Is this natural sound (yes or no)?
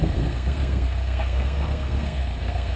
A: no